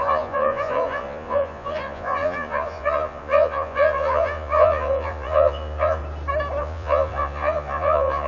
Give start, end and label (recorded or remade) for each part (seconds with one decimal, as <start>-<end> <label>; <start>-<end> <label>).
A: 0.0-6.0 remade; 6.0-6.6 recorded; 6.6-8.3 remade

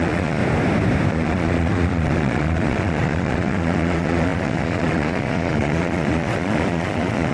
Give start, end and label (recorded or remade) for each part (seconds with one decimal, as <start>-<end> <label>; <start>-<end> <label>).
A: 0.0-0.4 remade; 0.4-1.1 recorded; 1.1-7.3 remade

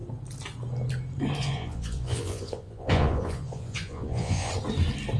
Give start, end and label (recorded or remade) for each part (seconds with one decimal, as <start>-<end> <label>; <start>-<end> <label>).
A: 0.0-1.4 recorded; 1.4-4.5 remade; 4.5-5.2 recorded

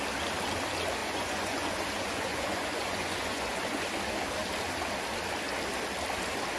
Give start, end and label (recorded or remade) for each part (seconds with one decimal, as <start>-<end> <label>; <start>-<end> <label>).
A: 0.0-1.0 recorded; 1.0-3.9 remade; 3.9-6.6 recorded

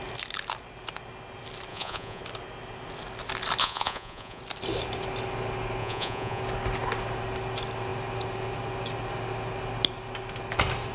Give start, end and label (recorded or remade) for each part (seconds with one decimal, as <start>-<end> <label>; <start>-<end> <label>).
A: 0.0-1.7 recorded; 1.7-2.2 remade; 2.2-3.6 recorded; 3.6-4.4 remade; 4.4-5.8 recorded; 5.8-6.4 remade; 6.4-10.9 recorded

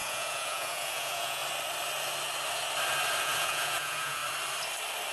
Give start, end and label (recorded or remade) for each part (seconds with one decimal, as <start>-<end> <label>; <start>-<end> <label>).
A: 0.0-1.4 remade; 1.4-3.2 recorded; 3.2-4.2 remade; 4.2-5.1 recorded

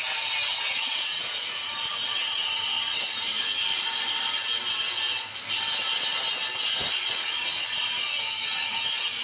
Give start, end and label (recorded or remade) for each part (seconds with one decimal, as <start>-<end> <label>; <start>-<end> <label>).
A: 0.0-0.6 recorded; 0.6-3.4 remade; 3.4-6.7 recorded; 6.7-9.2 remade

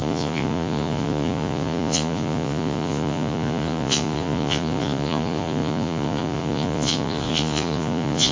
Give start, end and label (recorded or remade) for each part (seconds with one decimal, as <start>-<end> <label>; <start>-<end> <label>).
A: 0.0-8.3 remade